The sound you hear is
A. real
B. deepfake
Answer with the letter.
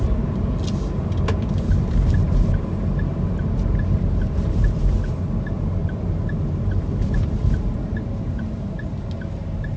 A